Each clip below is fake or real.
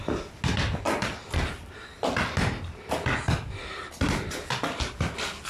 real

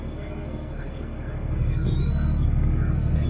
fake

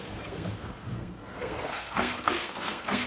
fake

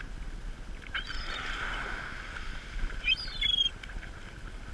real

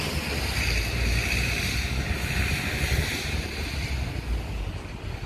real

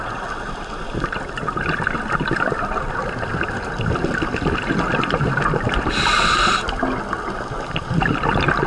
real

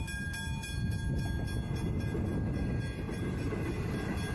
real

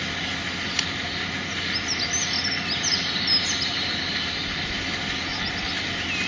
real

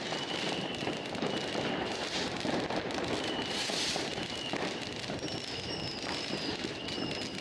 fake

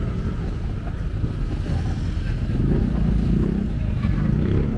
real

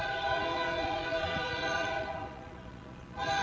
fake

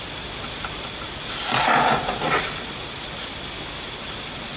real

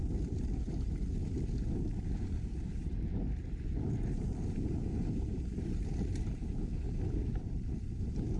real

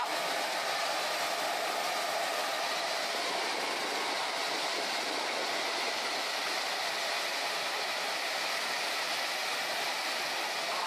real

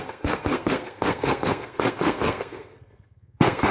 fake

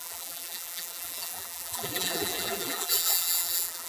fake